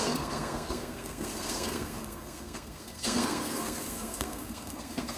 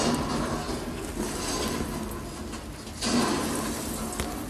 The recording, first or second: second